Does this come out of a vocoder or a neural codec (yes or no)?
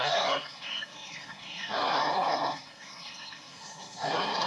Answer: yes